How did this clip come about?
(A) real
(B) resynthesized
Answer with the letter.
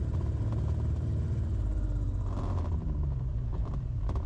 B